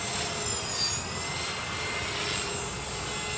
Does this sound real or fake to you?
real